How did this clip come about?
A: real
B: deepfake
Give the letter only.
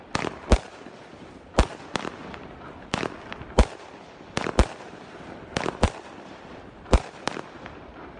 B